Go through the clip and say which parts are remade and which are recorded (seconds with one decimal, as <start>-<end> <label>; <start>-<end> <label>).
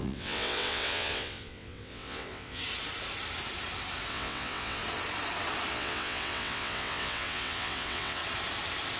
0.0-2.6 remade; 2.6-4.1 recorded; 4.1-4.8 remade; 4.8-5.7 recorded; 5.7-8.2 remade; 8.2-9.0 recorded